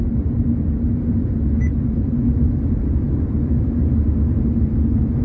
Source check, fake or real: real